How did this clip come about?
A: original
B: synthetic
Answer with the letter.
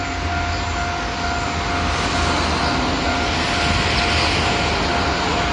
A